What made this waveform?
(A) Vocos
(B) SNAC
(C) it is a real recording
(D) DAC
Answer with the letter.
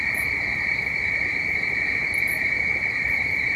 C